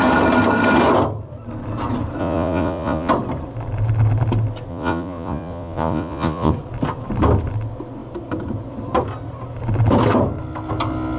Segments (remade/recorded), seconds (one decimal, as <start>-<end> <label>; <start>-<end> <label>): 0.0-2.2 recorded; 2.2-3.1 remade; 3.1-4.7 recorded; 4.7-6.5 remade; 6.5-11.2 recorded